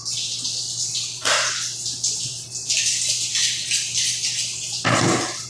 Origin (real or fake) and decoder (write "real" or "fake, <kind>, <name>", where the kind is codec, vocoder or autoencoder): real